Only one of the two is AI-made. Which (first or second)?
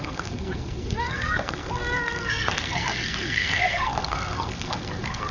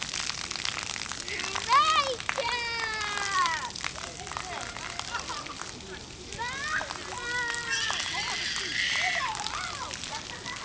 first